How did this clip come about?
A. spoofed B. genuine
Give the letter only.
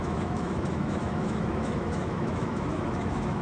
A